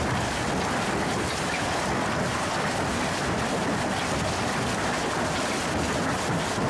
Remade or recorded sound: recorded